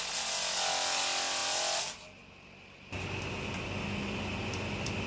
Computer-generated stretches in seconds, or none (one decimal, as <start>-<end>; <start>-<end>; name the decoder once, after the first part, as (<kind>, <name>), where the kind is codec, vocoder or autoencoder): none